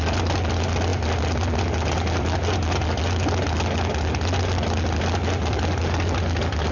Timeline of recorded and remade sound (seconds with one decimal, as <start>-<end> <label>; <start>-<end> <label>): 0.0-6.7 recorded

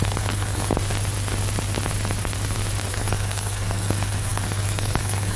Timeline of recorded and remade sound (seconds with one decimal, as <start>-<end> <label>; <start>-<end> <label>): 0.0-0.7 remade; 0.7-2.9 recorded; 2.9-5.4 remade

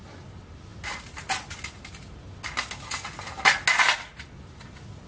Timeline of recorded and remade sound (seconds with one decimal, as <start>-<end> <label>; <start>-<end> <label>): 0.0-5.1 recorded